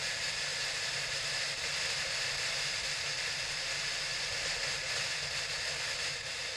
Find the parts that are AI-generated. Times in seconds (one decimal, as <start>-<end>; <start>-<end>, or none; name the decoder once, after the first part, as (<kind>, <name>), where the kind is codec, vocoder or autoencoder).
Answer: 0.5-2.1 (vocoder, BigVGAN v2); 4.1-4.9